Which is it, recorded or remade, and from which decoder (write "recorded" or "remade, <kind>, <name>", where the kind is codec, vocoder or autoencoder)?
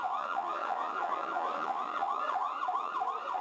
remade, vocoder, Vocos